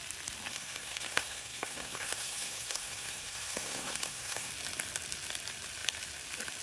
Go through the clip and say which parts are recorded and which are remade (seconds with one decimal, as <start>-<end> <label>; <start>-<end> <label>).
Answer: 0.0-0.5 recorded; 0.5-4.5 remade; 4.5-6.6 recorded